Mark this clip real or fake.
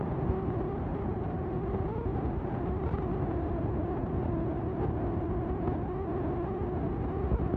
real